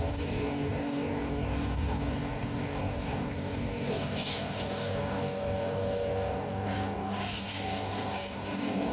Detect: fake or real fake